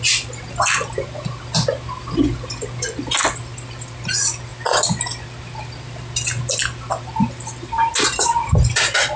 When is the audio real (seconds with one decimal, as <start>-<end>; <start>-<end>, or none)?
0.0-9.2

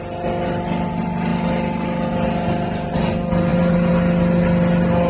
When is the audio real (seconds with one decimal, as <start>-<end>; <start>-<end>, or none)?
0.0-5.1